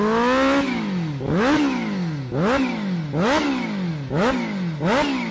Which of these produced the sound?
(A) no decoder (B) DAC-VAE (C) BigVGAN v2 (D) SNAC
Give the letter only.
A